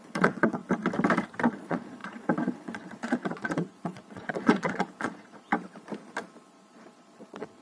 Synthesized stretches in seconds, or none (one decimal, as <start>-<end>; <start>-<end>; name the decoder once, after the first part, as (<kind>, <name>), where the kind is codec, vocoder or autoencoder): 0.0-0.6 (vocoder, Vocos); 1.5-5.5; 6.5-7.6